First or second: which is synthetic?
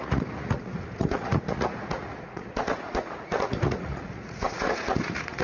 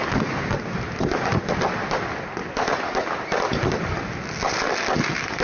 first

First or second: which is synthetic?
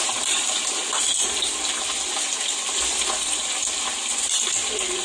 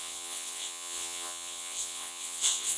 second